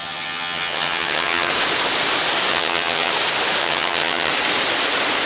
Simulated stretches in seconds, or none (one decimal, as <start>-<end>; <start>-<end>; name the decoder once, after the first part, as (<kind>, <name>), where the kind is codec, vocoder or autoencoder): 0.0-1.5 (vocoder, HiFi-GAN); 2.5-3.1; 3.6-4.3